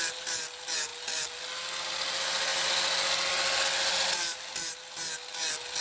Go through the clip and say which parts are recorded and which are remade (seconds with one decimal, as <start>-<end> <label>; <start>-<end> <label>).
0.0-5.8 recorded